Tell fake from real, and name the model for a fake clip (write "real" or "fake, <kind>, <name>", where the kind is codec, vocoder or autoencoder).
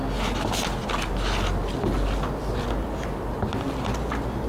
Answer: real